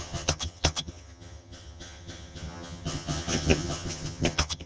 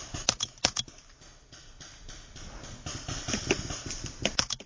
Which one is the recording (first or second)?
second